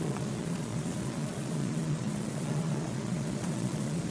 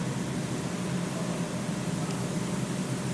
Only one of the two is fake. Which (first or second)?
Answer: first